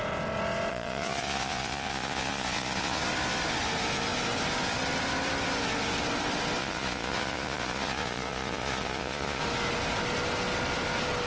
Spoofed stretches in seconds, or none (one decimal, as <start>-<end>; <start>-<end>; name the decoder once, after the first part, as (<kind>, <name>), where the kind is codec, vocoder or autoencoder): 0.7-3.0 (vocoder, Vocos); 6.6-9.4